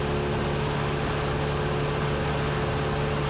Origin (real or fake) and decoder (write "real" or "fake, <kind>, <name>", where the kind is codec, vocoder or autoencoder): real